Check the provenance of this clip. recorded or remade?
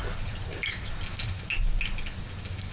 recorded